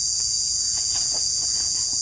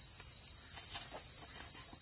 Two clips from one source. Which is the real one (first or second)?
second